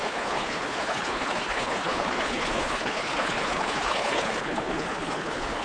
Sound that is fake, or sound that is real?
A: fake